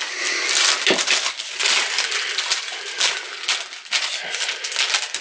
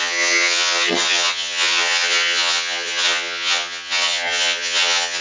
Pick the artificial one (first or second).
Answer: second